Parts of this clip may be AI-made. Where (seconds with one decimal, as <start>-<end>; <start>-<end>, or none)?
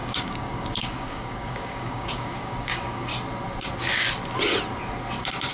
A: 0.0-3.1